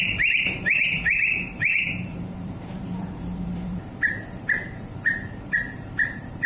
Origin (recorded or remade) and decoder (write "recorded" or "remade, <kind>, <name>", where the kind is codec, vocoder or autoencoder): remade, vocoder, BigVGAN v2